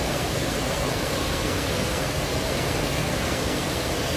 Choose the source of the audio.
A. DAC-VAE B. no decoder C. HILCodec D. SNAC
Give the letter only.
D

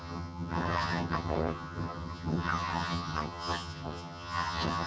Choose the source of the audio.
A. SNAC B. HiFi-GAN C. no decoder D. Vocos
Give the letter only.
B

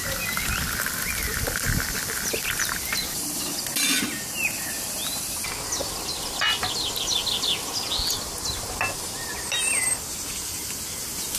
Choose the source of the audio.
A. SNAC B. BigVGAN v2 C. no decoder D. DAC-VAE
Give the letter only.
C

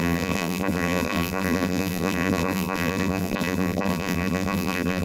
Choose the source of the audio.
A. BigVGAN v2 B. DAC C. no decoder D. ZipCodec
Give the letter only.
A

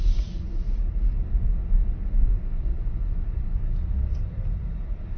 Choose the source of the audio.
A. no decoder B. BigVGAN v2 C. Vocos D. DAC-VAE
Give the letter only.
B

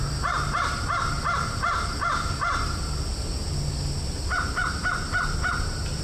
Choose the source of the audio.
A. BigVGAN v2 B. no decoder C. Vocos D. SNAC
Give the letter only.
B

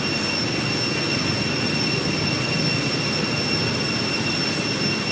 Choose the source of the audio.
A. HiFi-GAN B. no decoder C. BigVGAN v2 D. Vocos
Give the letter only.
B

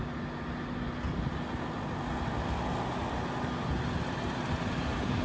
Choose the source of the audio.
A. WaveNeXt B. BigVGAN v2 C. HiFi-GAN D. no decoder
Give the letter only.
D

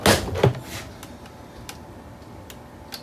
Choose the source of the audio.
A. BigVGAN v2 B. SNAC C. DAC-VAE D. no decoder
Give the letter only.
D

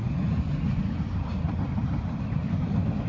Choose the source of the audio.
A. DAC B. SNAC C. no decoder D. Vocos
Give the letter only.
C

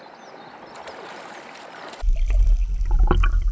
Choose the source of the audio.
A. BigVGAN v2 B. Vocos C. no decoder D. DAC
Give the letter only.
C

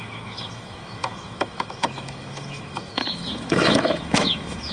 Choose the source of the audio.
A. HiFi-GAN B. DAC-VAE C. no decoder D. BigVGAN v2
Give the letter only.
B